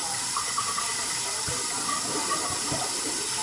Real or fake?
fake